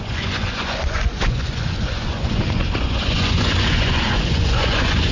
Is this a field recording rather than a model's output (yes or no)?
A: no